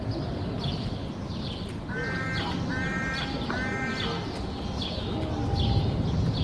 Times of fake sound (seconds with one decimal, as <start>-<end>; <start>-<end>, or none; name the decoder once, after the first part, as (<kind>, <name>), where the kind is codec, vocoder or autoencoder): none